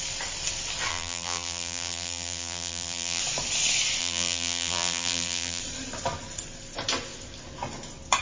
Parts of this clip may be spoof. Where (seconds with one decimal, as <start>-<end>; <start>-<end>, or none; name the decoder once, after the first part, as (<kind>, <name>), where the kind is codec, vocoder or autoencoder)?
0.9-3.2 (vocoder, BigVGAN v2); 4.0-5.6